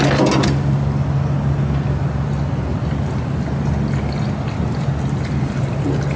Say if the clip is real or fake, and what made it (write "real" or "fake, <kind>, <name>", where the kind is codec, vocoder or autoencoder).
real